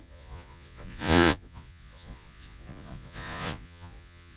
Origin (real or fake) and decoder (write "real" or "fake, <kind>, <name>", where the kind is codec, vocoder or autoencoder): fake, vocoder, Vocos